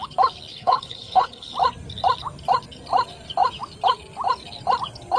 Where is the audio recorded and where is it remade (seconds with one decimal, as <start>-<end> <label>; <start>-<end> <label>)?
0.0-0.5 recorded; 0.5-1.5 remade; 1.5-5.2 recorded